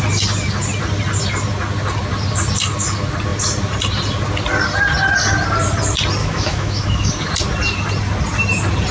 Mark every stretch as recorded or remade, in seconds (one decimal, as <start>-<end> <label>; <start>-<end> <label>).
0.0-6.2 recorded; 6.2-7.1 remade; 7.1-8.9 recorded